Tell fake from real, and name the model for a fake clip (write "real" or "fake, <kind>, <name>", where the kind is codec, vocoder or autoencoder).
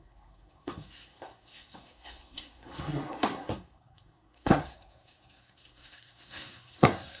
fake, codec, SNAC